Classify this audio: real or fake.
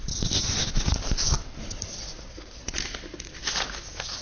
real